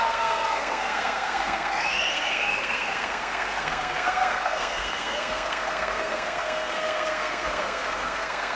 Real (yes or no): no